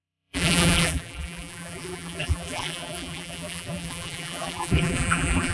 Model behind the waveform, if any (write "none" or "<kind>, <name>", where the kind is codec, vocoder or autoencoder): vocoder, BigVGAN v2